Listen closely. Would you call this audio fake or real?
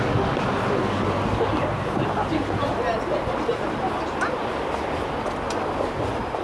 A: real